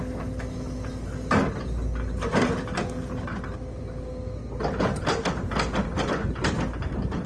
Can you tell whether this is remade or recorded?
recorded